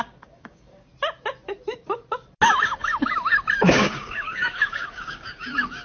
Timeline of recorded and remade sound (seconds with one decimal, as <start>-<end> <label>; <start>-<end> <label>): 0.0-0.9 remade; 0.9-3.6 recorded; 3.6-5.8 remade